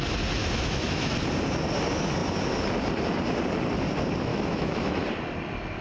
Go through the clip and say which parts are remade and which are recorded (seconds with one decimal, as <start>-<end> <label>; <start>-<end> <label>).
0.0-0.4 recorded; 0.4-1.1 remade; 1.1-4.3 recorded; 4.3-5.0 remade; 5.0-5.8 recorded